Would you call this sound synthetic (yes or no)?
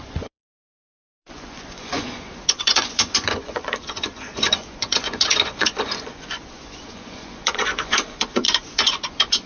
yes